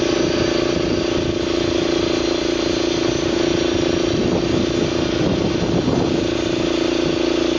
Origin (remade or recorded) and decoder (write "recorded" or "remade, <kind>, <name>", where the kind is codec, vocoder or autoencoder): recorded